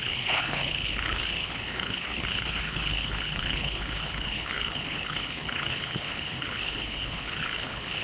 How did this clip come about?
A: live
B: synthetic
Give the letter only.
B